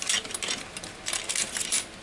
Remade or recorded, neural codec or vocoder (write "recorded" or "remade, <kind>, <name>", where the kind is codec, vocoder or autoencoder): recorded